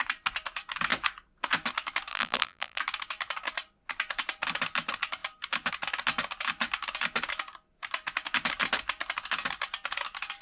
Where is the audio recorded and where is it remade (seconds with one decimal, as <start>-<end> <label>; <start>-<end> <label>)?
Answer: 0.0-2.1 recorded; 2.1-2.8 remade; 2.8-10.4 recorded